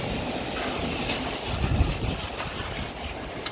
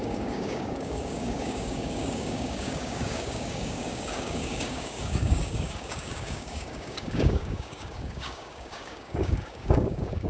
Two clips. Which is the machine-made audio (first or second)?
second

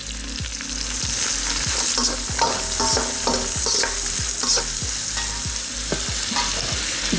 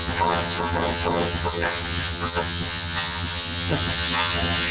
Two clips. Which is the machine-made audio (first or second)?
second